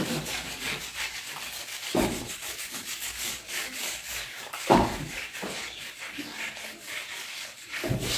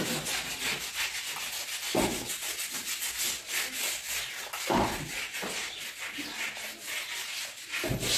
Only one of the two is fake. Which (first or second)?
first